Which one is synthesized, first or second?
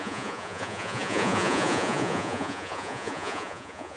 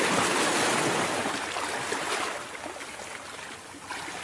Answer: first